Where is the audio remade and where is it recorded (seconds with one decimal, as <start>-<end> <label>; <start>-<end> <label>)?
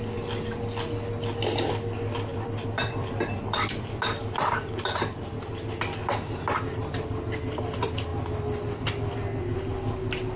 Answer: 0.0-2.3 recorded; 2.3-5.5 remade; 5.5-10.4 recorded